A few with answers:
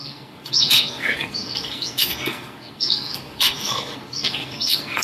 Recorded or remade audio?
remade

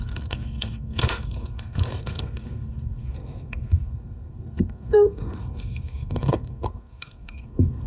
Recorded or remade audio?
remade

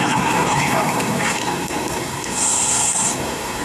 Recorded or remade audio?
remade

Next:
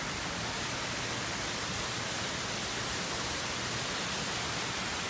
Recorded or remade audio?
recorded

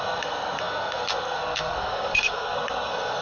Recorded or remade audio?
remade